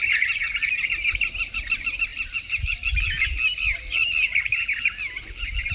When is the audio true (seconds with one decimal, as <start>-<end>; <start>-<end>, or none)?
0.0-5.7